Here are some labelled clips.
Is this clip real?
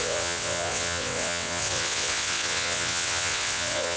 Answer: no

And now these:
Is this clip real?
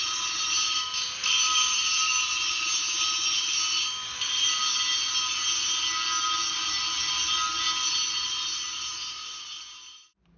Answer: yes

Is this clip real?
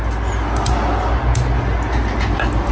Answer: yes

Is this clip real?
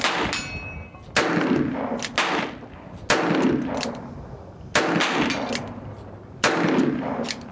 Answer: yes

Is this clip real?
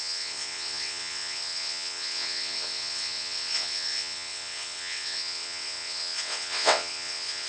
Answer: no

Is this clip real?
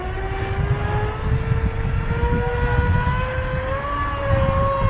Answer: yes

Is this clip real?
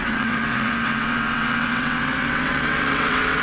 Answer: no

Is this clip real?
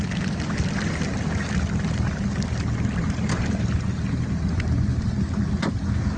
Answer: yes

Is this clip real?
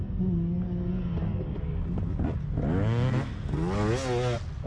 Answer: yes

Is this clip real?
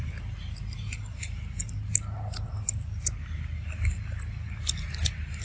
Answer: yes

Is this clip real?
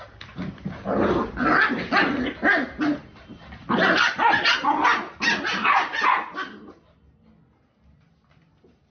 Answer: yes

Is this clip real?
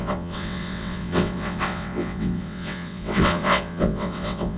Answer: no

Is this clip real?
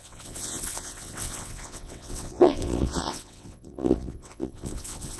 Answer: no